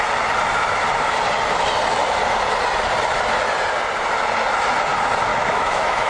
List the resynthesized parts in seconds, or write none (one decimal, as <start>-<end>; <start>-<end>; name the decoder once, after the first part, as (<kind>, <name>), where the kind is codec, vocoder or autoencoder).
5.3-6.1 (autoencoder, DAC-VAE)

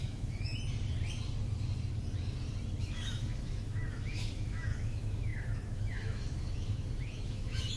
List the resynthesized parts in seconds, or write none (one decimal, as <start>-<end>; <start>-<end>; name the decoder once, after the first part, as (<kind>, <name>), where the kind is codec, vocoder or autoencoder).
0.0-0.5 (autoencoder, DAC-VAE); 2.8-7.8

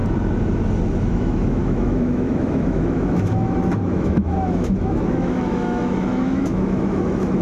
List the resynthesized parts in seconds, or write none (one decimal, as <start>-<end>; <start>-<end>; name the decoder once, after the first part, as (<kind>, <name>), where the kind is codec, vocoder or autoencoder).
0.9-7.4 (autoencoder, DAC-VAE)

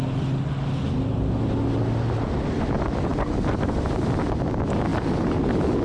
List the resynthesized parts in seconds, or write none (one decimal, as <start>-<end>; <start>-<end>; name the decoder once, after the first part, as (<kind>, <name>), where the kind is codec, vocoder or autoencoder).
none

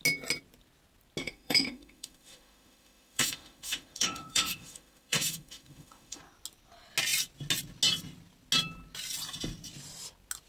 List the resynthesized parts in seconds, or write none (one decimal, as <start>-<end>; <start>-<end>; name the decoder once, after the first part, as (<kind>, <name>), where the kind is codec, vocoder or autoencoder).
1.2-6.2 (autoencoder, DAC-VAE)

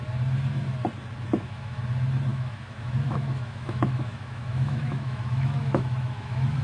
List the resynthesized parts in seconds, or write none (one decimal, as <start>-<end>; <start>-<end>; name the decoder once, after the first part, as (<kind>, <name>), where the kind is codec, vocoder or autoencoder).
1.3-1.8 (autoencoder, DAC-VAE); 2.3-6.6